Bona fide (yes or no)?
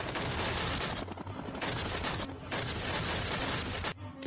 yes